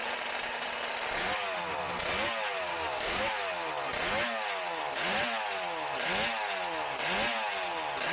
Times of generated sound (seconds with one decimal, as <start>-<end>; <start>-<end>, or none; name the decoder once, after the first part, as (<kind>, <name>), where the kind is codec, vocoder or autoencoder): 2.7-3.3 (codec, DAC)

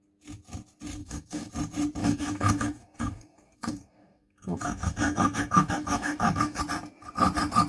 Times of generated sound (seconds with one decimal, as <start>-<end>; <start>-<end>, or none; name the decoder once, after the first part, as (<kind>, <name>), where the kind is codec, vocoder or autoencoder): 1.0-1.5 (codec, DAC); 2.0-6.6

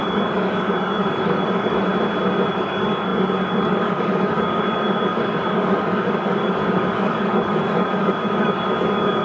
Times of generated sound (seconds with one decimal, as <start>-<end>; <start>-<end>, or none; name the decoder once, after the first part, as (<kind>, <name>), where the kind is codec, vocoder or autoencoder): 0.0-1.9 (codec, DAC); 2.5-9.2

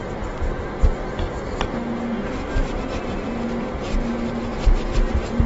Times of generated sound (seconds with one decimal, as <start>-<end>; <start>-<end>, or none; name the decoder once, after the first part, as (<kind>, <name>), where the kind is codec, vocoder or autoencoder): none